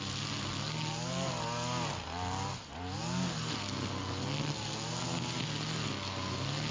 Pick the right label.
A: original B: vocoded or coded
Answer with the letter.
A